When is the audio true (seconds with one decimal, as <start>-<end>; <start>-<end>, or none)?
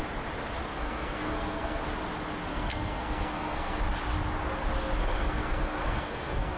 0.0-0.6; 1.8-2.5; 3.8-5.0